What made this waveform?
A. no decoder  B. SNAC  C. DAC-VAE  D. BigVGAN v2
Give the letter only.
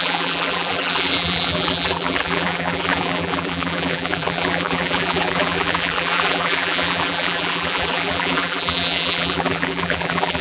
D